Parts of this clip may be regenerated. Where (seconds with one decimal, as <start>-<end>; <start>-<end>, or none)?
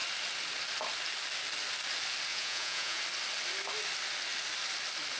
2.3-3.0